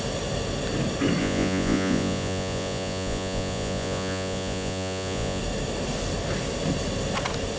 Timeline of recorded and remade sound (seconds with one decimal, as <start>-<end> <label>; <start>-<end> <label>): 0.0-1.2 recorded; 1.2-5.4 remade; 5.4-7.6 recorded